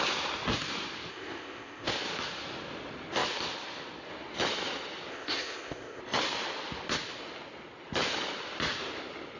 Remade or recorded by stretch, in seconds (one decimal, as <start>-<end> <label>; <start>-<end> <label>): 0.0-1.1 recorded; 1.1-1.9 remade; 1.9-5.1 recorded; 5.1-6.0 remade; 6.0-9.4 recorded